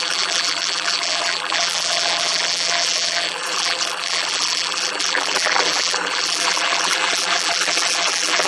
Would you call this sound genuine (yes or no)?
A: no